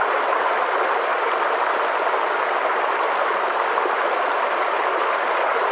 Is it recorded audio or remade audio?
recorded